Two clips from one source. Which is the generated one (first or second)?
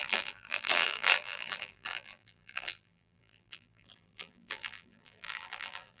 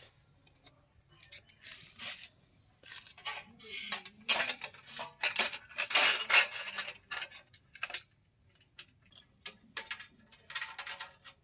first